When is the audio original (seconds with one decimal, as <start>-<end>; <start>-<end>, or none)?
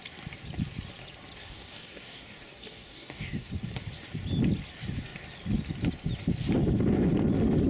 0.0-1.4; 3.5-7.7